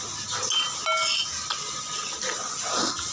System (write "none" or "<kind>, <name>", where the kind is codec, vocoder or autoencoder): none